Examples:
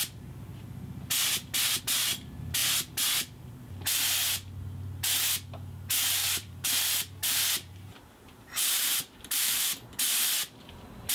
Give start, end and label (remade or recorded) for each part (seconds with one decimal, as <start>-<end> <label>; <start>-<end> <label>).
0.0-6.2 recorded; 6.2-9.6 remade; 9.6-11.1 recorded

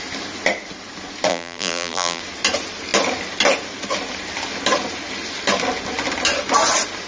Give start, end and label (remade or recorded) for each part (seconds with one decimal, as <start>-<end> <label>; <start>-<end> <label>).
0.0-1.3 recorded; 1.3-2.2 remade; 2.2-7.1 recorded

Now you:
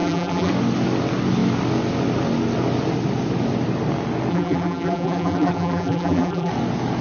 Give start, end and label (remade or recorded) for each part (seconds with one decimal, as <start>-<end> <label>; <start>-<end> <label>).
0.0-0.5 remade; 0.5-4.3 recorded; 4.3-6.5 remade; 6.5-7.0 recorded